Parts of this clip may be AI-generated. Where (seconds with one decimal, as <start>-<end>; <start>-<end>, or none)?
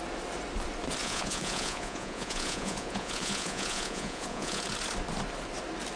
1.0-4.6